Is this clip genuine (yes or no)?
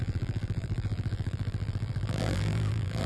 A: no